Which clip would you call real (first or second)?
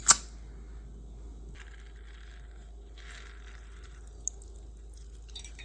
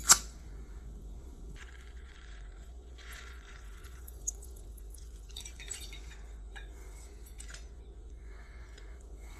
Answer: first